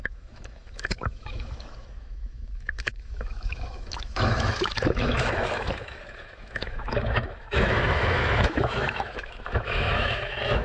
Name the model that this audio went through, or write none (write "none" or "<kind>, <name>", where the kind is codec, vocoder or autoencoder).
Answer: autoencoder, DAC-VAE